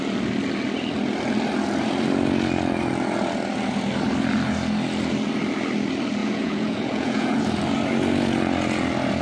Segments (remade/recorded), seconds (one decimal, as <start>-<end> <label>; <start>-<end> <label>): 0.0-6.2 recorded; 6.2-7.4 remade; 7.4-9.2 recorded